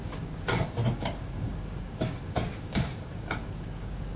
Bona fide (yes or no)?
no